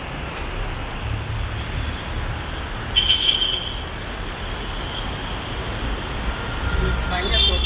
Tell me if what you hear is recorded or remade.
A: recorded